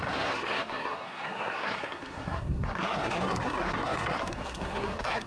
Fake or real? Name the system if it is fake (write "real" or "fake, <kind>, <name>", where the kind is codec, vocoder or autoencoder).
fake, codec, SNAC